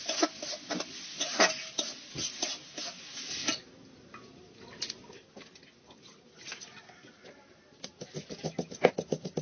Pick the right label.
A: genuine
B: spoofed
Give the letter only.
A